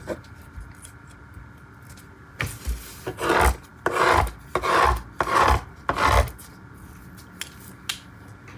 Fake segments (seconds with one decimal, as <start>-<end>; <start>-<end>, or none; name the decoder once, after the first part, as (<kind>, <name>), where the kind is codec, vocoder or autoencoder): none